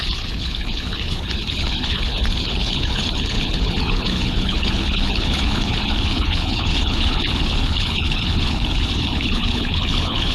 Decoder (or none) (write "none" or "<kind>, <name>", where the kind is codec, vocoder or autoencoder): codec, HILCodec